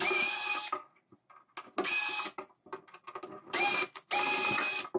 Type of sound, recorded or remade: recorded